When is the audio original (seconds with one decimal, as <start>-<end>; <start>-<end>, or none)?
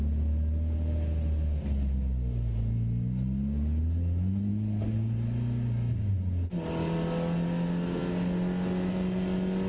0.0-9.7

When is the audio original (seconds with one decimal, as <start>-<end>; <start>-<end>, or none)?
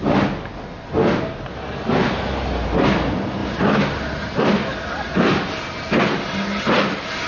0.0-7.3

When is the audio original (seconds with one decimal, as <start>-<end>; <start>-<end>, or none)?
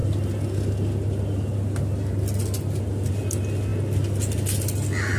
0.0-5.2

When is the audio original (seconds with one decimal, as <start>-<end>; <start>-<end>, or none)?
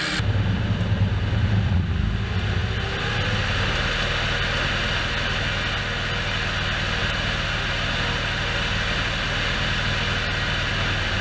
0.0-11.2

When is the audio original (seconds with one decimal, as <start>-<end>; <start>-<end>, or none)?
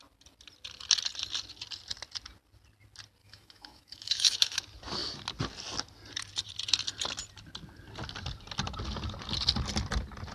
0.0-3.2; 4.6-10.3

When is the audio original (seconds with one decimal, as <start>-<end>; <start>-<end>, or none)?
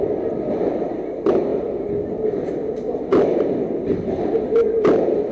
0.0-5.3